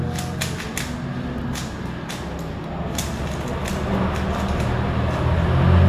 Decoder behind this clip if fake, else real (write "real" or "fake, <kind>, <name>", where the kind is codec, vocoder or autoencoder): real